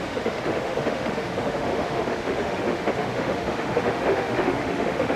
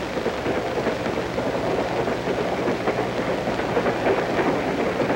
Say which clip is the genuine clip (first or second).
second